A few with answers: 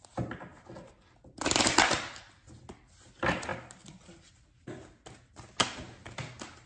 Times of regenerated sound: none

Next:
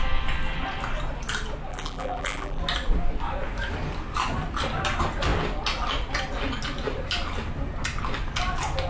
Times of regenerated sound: 1.7-2.6 (vocoder, BigVGAN v2)

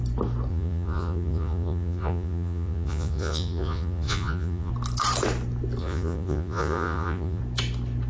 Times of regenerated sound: 0.5-4.7 (vocoder, Vocos); 5.8-7.4

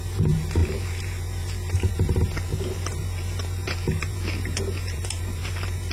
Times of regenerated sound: 0.0-5.9 (vocoder, BigVGAN v2)

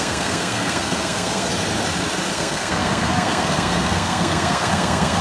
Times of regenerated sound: 0.0-1.7 (codec, SNAC); 2.3-5.2

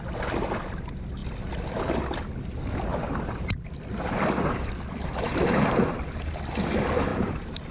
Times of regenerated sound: 2.9-6.3 (vocoder, BigVGAN v2); 7.1-7.7

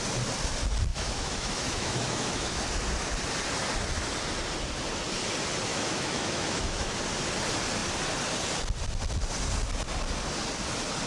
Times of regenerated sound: 0.9-2.6 (autoencoder, DAC-VAE); 5.7-6.9

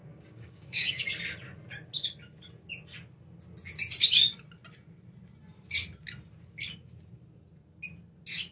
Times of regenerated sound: 0.0-1.1 (codec, DAC)